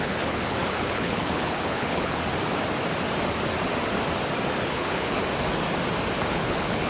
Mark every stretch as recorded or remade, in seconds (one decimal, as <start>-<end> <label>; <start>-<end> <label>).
0.0-2.2 remade; 2.2-4.6 recorded; 4.6-5.2 remade; 5.2-6.3 recorded; 6.3-6.9 remade